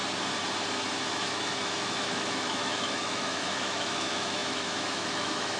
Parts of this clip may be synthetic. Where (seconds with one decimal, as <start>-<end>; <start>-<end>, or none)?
1.1-5.6